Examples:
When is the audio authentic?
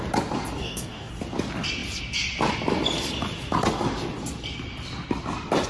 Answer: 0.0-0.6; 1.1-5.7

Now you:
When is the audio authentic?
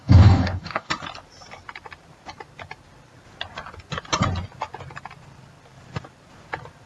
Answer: 0.9-6.9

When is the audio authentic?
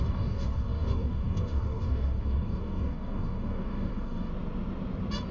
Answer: 4.3-5.3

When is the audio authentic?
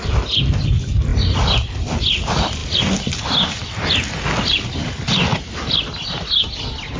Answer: 0.0-7.0